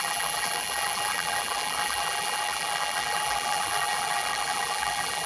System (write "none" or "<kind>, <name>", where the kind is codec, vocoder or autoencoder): vocoder, BigVGAN v2